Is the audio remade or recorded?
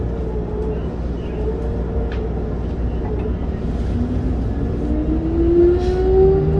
recorded